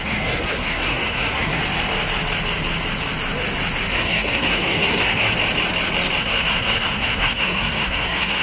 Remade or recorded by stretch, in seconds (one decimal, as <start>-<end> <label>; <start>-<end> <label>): 0.0-1.6 remade; 1.6-3.9 recorded; 3.9-5.3 remade; 5.3-6.2 recorded; 6.2-8.4 remade